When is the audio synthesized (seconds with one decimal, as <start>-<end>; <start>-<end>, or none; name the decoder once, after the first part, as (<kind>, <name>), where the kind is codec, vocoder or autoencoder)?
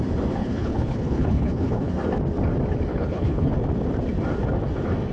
0.4-1.9 (codec, HILCodec); 2.9-3.5